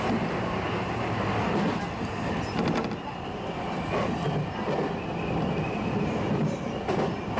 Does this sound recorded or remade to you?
recorded